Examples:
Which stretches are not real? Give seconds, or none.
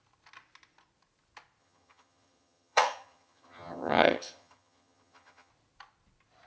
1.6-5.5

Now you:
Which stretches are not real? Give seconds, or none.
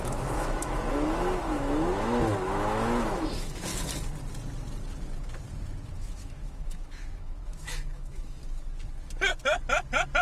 0.0-3.7; 5.9-8.4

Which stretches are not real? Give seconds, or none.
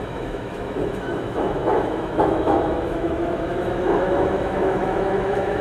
0.0-5.6